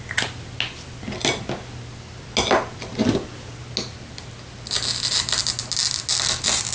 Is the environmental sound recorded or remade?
recorded